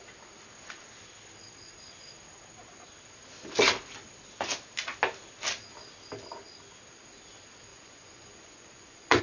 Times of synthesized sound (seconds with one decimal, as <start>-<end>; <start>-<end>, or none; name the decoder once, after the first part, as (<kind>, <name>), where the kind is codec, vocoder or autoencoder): 7.7-9.2 (vocoder, Vocos)